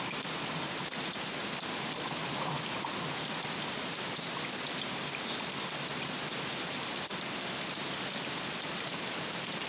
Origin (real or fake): real